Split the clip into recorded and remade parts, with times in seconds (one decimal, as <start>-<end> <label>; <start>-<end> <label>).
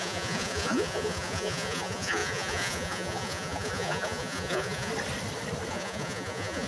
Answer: 0.0-4.9 remade; 4.9-5.7 recorded; 5.7-6.7 remade